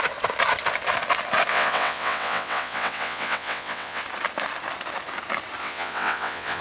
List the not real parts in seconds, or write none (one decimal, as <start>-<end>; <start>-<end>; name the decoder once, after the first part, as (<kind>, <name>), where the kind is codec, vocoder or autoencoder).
1.5-4.0 (vocoder, WaveNeXt); 5.6-6.6